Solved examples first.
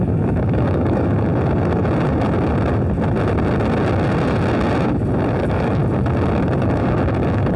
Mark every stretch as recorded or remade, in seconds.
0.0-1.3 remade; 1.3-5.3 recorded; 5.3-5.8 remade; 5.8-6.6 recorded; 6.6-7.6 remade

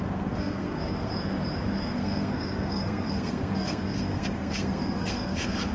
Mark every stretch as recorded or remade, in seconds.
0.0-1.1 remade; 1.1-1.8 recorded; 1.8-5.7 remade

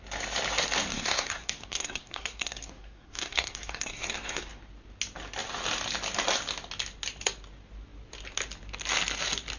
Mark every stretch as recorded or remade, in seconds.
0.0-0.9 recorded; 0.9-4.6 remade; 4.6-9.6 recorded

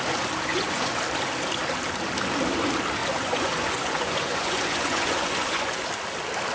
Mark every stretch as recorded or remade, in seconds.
0.0-0.5 recorded; 0.5-1.0 remade; 1.0-3.0 recorded; 3.0-5.9 remade; 5.9-6.5 recorded

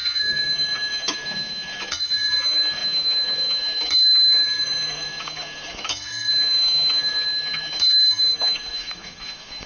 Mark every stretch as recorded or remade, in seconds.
0.0-9.7 remade